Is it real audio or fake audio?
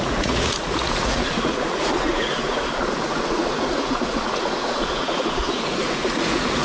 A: fake